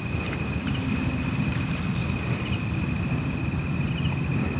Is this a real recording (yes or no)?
yes